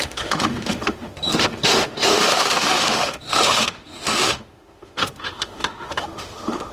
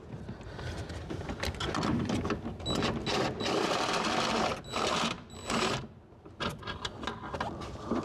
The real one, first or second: second